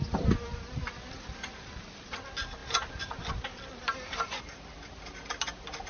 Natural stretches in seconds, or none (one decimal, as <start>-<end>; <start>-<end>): 0.0-5.9